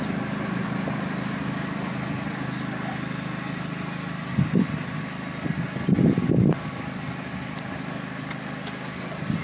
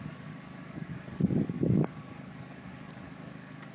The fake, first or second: second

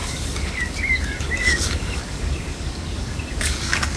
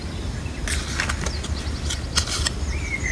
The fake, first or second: first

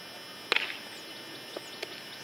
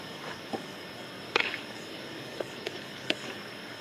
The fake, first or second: second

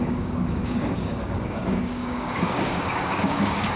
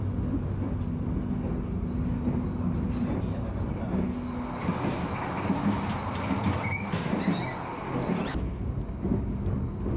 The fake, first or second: first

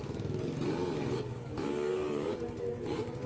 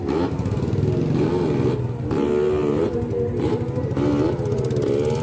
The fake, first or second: first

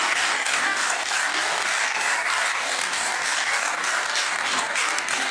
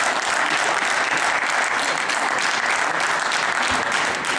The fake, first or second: first